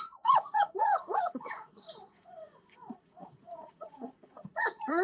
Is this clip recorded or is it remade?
remade